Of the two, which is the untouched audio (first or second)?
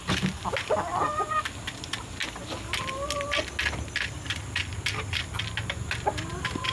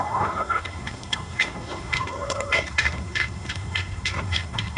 first